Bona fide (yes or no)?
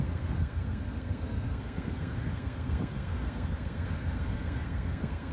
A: no